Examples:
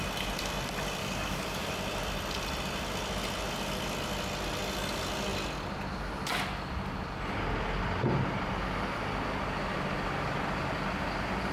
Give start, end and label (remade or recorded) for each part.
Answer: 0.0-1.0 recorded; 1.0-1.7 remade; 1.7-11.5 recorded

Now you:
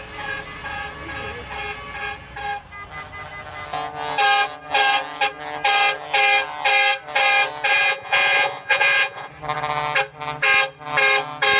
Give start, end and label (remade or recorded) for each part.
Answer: 0.0-7.7 recorded; 7.7-9.3 remade; 9.3-11.6 recorded

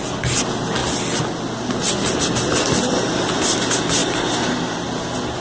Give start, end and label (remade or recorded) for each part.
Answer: 0.0-5.4 recorded

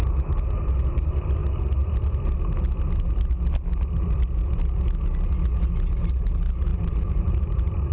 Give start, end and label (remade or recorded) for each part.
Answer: 0.0-0.9 recorded; 0.9-1.4 remade; 1.4-6.1 recorded; 6.1-7.9 remade